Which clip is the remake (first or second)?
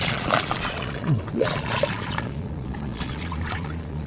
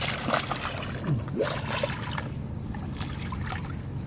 first